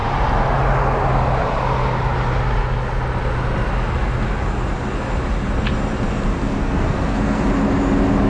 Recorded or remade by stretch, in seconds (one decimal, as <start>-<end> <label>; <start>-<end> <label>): 0.0-6.4 recorded; 6.4-7.5 remade; 7.5-8.3 recorded